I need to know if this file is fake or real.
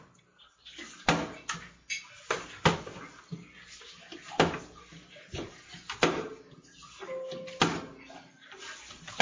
real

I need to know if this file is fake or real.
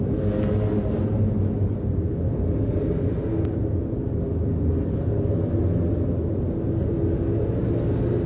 real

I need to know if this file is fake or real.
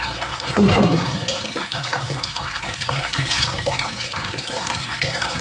fake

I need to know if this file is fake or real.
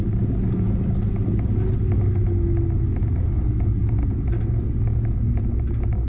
real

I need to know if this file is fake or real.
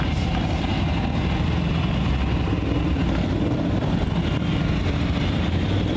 real